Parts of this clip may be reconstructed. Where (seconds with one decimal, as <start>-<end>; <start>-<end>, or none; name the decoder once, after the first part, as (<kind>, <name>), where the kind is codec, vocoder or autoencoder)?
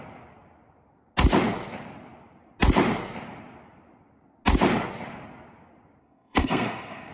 6.0-7.1 (codec, SNAC)